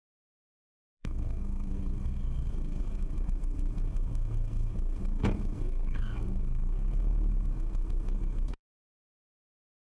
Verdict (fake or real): fake